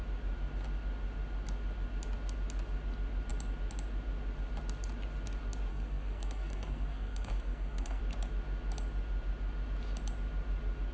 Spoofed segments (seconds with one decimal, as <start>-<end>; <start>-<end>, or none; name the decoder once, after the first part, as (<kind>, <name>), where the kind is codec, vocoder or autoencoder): 5.7-8.0 (codec, SNAC)